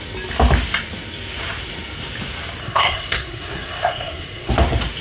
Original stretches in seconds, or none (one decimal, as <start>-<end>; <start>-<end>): 0.0-2.6; 4.5-5.0